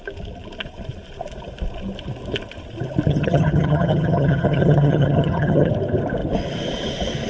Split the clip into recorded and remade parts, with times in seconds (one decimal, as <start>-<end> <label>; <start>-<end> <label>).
0.0-3.1 recorded; 3.1-5.7 remade; 5.7-7.3 recorded